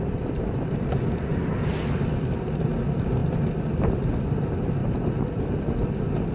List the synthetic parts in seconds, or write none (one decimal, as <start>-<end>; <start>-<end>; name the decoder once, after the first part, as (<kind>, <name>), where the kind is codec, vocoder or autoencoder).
none